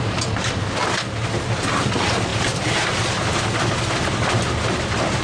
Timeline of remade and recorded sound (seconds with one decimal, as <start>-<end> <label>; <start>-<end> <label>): 0.0-5.2 recorded